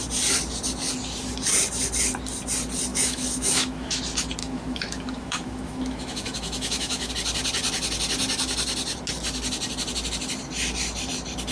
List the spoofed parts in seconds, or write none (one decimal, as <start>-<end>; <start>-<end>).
2.9-4.0; 4.4-7.1